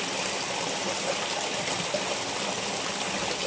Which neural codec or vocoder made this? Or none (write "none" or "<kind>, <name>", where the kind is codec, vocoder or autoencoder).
none